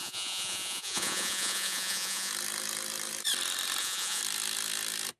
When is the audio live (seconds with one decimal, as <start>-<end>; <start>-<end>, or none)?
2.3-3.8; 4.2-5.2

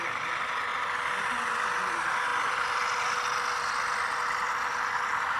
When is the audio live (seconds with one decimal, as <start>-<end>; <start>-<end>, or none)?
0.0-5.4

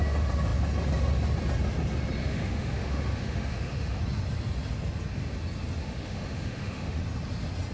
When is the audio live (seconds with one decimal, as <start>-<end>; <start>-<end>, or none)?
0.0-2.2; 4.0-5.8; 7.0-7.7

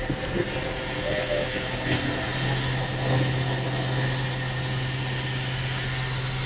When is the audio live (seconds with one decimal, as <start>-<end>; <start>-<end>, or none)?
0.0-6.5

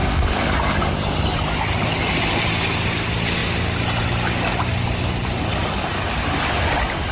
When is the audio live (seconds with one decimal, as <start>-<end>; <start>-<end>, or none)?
0.0-7.1